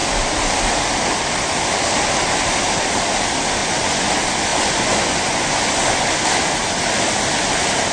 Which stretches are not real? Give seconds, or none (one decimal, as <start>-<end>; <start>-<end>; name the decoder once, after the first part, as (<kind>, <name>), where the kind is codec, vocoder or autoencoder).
3.6-4.1 (vocoder, Vocos); 4.5-6.1